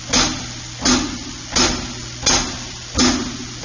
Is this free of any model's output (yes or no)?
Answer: yes